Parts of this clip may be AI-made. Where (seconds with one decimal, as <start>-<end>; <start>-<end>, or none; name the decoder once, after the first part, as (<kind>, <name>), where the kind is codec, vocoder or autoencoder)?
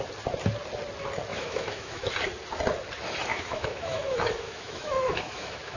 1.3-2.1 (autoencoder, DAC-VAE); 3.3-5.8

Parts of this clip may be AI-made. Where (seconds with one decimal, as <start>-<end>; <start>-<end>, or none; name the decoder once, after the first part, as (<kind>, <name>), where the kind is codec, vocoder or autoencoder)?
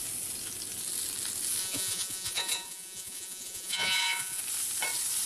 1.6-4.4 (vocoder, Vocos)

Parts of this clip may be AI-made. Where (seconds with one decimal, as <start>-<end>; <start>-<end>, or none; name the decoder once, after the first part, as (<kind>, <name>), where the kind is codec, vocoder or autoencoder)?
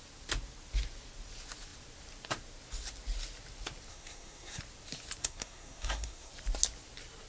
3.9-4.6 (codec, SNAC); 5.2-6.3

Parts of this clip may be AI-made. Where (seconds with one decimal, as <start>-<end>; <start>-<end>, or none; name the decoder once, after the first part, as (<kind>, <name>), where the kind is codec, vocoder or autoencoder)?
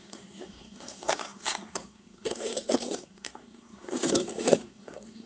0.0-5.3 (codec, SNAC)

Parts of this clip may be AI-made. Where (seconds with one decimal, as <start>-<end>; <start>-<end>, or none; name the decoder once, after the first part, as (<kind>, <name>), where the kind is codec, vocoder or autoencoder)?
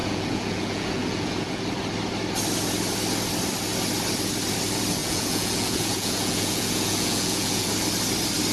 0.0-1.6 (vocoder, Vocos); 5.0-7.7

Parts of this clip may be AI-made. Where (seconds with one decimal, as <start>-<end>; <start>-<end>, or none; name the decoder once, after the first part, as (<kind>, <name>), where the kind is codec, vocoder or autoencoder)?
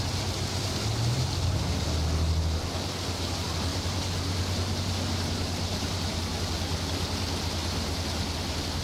3.7-6.2 (vocoder, BigVGAN v2)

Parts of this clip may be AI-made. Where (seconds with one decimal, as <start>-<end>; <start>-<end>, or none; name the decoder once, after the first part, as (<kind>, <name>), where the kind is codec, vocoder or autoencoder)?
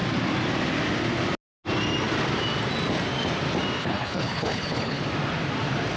3.8-5.0 (codec, HILCodec)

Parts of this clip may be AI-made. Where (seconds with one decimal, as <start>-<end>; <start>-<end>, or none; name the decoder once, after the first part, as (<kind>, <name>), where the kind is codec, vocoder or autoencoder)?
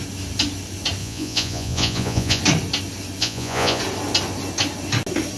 1.0-2.4 (vocoder, Vocos); 3.2-3.8